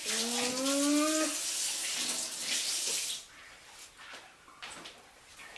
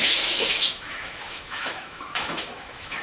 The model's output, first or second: second